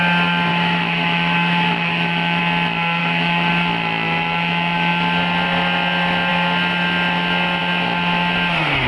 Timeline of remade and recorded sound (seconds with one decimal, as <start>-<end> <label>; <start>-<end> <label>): 0.0-0.5 recorded; 0.5-2.4 remade; 2.4-3.0 recorded; 3.0-3.5 remade; 3.5-8.9 recorded

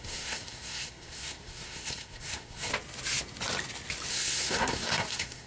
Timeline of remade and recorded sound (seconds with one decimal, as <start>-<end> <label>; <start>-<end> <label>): 0.0-2.7 remade; 2.7-4.1 recorded; 4.1-5.5 remade